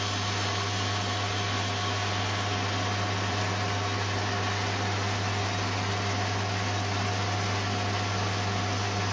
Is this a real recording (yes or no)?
yes